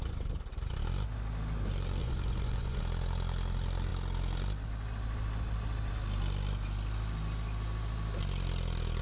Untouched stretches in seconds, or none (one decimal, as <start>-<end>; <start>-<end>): 0.0-2.0; 2.8-9.0